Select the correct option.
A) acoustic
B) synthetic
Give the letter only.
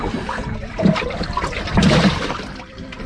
B